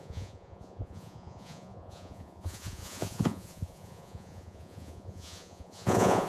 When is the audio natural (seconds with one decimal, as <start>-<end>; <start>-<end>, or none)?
none